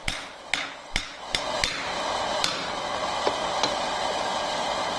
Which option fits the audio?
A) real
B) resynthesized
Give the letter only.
A